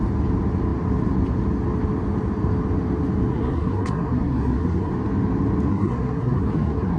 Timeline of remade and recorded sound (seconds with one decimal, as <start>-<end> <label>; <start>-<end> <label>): 0.0-3.3 recorded; 3.3-4.9 remade; 4.9-5.7 recorded; 5.7-7.0 remade